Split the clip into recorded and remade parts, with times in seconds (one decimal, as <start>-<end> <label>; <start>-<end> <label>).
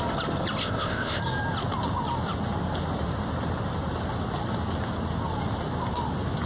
0.0-0.6 recorded; 0.6-1.2 remade; 1.2-6.5 recorded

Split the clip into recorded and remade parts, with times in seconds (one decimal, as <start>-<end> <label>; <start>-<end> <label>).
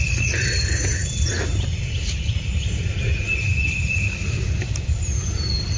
0.0-5.8 recorded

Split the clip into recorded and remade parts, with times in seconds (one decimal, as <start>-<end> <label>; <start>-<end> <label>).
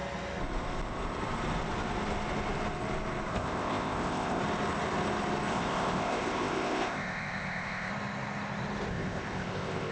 0.0-3.3 recorded; 3.3-4.4 remade; 4.4-5.5 recorded; 5.5-7.9 remade; 7.9-8.9 recorded; 8.9-9.9 remade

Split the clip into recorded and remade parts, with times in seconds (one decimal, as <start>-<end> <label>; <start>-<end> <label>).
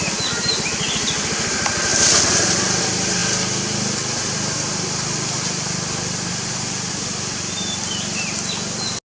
0.0-9.2 recorded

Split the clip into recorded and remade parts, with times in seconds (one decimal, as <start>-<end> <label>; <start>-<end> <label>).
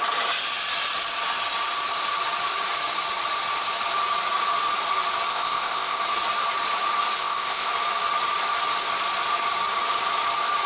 0.0-5.3 recorded; 5.3-6.0 remade; 6.0-7.2 recorded; 7.2-7.7 remade; 7.7-10.7 recorded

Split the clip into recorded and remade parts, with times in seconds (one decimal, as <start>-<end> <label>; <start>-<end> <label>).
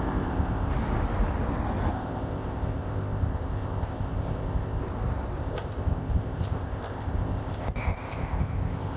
0.0-0.7 remade; 0.7-1.9 recorded; 1.9-4.8 remade; 4.8-5.4 recorded; 5.4-9.0 remade